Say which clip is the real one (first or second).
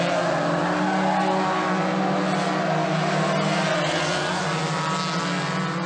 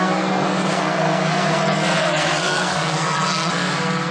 first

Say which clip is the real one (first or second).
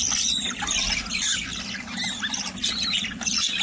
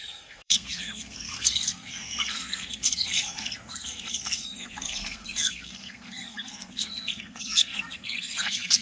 first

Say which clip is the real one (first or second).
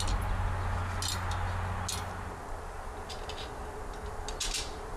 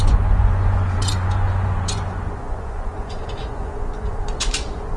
first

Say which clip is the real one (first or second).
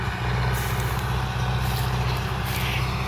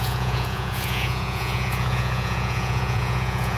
first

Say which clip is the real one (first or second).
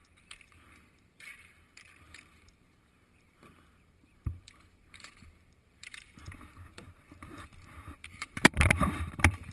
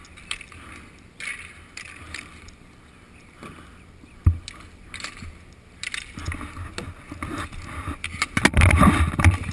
second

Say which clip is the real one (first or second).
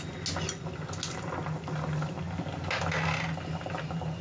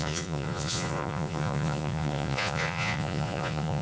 first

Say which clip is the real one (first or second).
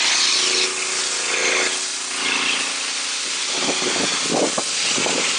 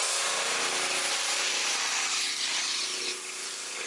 first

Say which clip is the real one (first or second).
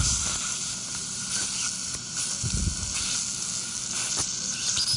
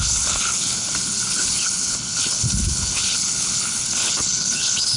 first